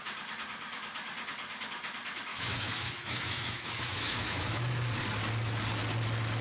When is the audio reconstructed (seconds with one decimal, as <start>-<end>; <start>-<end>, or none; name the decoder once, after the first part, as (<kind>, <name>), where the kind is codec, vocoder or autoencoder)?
2.3-4.6 (autoencoder, DAC-VAE)